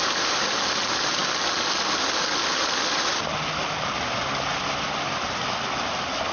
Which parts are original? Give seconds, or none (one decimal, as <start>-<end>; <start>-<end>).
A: 0.0-6.3